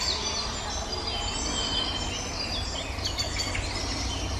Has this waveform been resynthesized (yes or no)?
no